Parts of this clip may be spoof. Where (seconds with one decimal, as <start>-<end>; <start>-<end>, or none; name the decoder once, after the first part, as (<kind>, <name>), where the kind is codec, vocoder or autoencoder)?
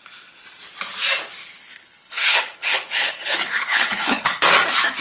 1.4-4.4 (codec, HILCodec)